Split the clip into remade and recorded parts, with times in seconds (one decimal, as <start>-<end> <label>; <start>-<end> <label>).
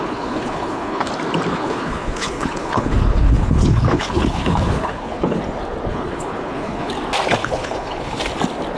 0.0-1.1 remade; 1.1-1.5 recorded; 1.5-5.4 remade; 5.4-5.9 recorded; 5.9-6.9 remade; 6.9-7.4 recorded; 7.4-8.2 remade; 8.2-8.8 recorded